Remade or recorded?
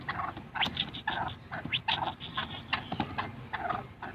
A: recorded